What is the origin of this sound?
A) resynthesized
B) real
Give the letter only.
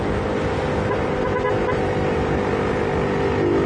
B